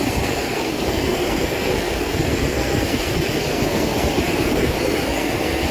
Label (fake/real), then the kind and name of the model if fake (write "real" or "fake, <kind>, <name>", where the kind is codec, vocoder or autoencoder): fake, codec, SNAC